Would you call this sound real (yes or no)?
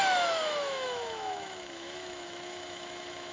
no